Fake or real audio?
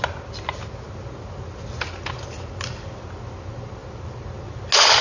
real